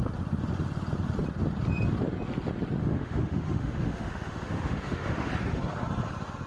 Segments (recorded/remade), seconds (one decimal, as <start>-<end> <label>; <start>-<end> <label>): 0.0-2.8 recorded; 2.8-5.3 remade; 5.3-6.5 recorded